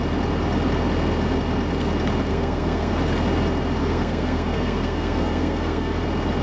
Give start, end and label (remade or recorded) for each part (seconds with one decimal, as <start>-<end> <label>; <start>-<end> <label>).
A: 0.0-2.3 recorded; 2.3-2.9 remade; 2.9-3.8 recorded; 3.8-6.0 remade; 6.0-6.4 recorded